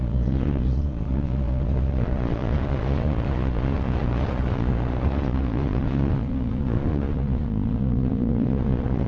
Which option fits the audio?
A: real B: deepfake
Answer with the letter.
B